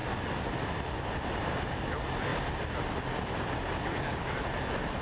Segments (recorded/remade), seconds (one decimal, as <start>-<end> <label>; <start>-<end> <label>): 0.0-2.3 recorded; 2.3-4.0 remade; 4.0-5.0 recorded